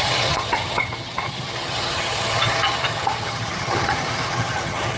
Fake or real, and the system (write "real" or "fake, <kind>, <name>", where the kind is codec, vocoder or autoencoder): fake, vocoder, HiFi-GAN